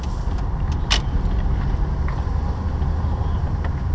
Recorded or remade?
recorded